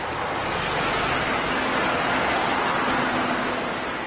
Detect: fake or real real